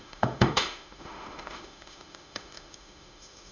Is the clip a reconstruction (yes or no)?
yes